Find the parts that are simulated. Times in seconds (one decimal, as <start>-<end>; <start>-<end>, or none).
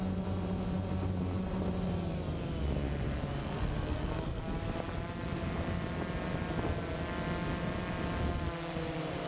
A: 3.4-4.4